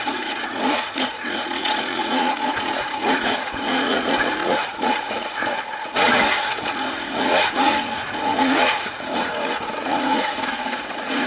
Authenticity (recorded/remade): remade